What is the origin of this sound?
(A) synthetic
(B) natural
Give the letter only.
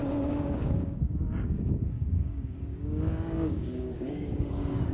A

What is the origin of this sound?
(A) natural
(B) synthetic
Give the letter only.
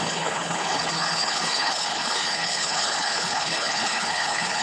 B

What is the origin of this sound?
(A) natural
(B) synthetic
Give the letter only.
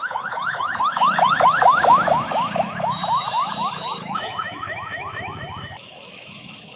B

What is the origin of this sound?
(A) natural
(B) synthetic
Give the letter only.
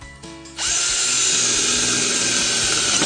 A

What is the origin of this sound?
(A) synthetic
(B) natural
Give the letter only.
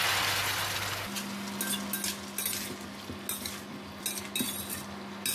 B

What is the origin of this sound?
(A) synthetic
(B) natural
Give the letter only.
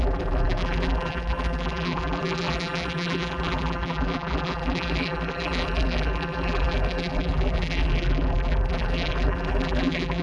A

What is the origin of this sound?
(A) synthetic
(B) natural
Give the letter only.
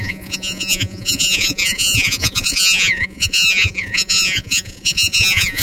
A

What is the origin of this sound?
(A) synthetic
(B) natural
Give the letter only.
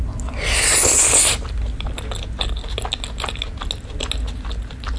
B